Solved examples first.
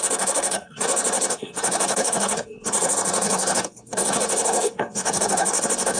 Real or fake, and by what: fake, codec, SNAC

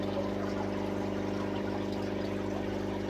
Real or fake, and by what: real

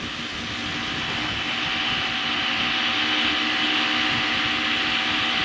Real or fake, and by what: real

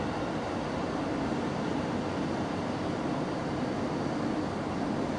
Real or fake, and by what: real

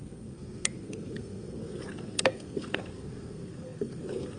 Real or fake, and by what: fake, codec, SNAC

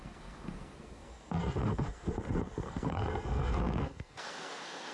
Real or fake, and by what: fake, codec, SNAC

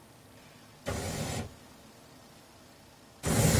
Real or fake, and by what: real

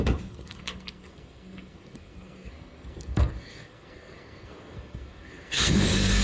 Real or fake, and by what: fake, codec, SNAC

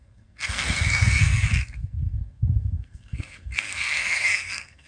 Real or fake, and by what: fake, codec, SNAC